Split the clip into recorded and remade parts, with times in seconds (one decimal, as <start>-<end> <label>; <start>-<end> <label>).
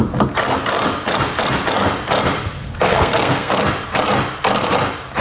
0.0-2.9 recorded; 2.9-3.6 remade; 3.6-5.2 recorded